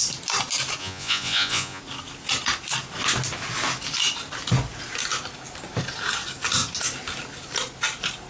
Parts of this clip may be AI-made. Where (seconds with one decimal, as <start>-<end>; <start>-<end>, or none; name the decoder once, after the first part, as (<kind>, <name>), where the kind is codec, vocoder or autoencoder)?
0.8-1.8 (vocoder, Vocos)